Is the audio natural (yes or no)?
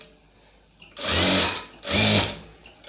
yes